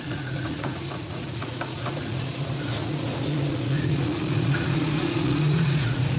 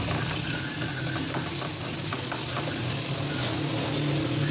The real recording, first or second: second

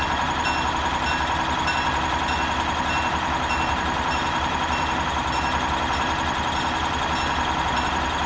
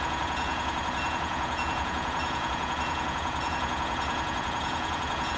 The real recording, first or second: first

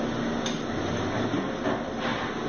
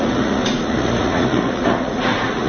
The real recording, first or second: first